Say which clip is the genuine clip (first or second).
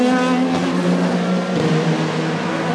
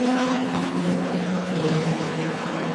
first